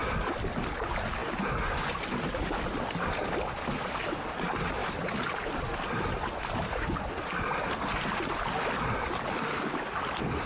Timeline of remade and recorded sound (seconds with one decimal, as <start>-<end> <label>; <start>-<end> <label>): 0.0-10.5 recorded